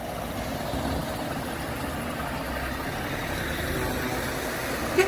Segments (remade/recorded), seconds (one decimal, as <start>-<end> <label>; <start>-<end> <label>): 0.0-5.1 recorded